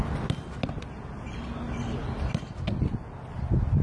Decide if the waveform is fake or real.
real